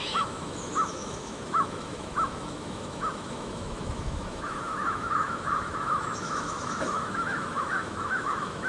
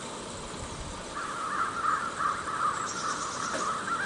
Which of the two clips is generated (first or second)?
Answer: first